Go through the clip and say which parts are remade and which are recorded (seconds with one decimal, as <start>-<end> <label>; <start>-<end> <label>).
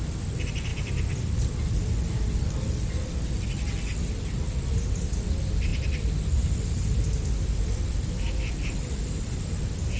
0.0-10.0 recorded